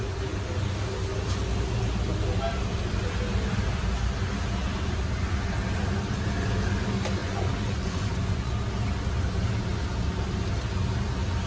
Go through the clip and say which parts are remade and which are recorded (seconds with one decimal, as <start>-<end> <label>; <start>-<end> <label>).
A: 0.0-7.2 recorded; 7.2-8.5 remade; 8.5-11.5 recorded

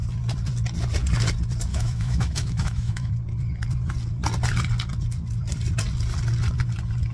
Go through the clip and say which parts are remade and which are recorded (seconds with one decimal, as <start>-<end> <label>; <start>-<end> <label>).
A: 0.0-1.7 recorded; 1.7-3.1 remade; 3.1-7.1 recorded

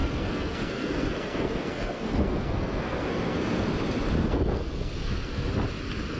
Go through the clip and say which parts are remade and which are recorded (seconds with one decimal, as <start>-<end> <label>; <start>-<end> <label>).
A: 0.0-3.7 remade; 3.7-4.2 recorded; 4.2-5.5 remade; 5.5-6.2 recorded

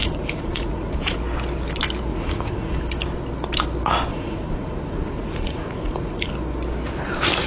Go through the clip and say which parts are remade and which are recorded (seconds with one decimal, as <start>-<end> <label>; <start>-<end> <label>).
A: 0.0-1.2 remade; 1.2-2.1 recorded; 2.1-2.8 remade; 2.8-4.1 recorded; 4.1-6.3 remade; 6.3-7.5 recorded